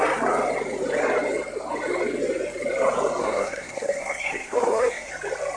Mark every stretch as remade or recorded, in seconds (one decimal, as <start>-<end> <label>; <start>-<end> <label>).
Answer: 0.0-3.2 recorded; 3.2-5.1 remade; 5.1-5.6 recorded